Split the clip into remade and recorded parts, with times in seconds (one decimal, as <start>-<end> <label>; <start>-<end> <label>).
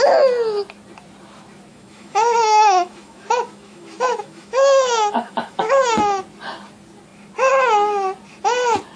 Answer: 0.0-1.7 recorded; 1.7-5.6 remade; 5.6-9.0 recorded